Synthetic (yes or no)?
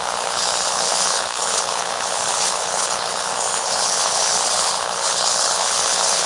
yes